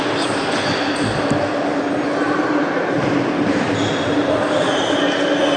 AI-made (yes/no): no